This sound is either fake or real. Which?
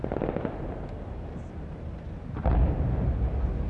real